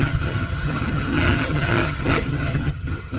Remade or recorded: remade